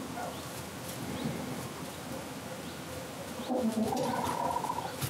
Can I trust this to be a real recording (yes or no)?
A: yes